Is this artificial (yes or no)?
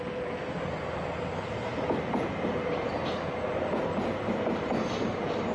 no